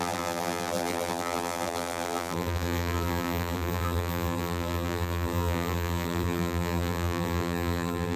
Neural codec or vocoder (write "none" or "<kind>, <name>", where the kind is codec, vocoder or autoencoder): vocoder, BigVGAN v2